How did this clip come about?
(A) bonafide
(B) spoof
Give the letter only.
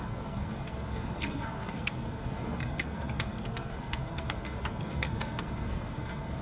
B